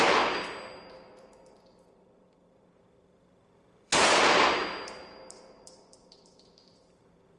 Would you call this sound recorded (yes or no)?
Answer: no